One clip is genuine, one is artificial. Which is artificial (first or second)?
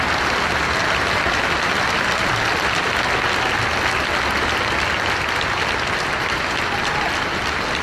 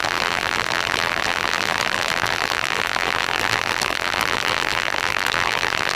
second